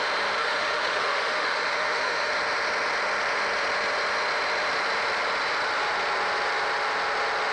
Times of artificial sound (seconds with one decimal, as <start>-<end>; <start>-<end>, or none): 0.4-2.3